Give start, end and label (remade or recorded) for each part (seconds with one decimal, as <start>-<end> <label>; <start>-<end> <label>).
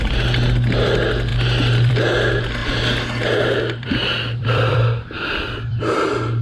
0.0-2.6 recorded; 2.6-5.8 remade; 5.8-6.4 recorded